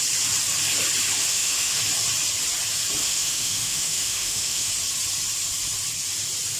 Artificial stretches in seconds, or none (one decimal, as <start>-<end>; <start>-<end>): 1.3-1.8; 3.0-4.7